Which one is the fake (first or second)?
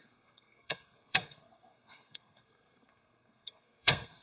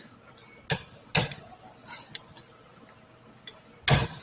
first